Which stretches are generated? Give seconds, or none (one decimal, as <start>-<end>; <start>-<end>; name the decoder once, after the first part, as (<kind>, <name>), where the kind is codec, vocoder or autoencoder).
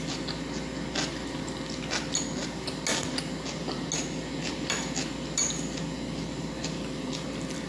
none